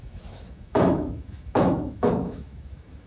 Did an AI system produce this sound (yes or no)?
yes